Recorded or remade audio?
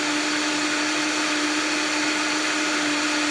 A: recorded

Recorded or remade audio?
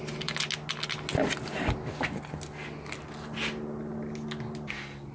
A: recorded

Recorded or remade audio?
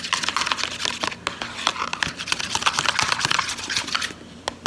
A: recorded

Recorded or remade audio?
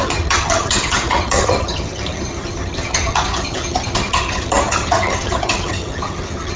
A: remade